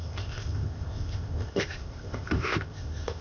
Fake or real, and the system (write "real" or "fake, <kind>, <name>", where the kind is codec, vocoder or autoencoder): fake, codec, ZipCodec